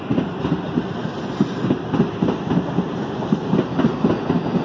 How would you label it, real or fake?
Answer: real